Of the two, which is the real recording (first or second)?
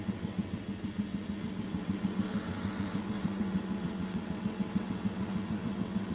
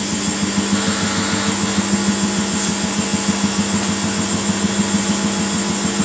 second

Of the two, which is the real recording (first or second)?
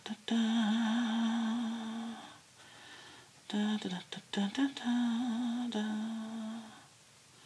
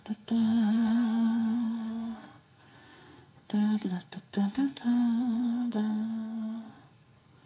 first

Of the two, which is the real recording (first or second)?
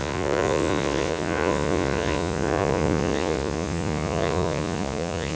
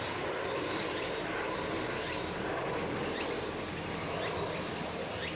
second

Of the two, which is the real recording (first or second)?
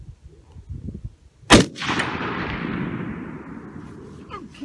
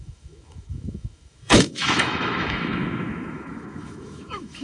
first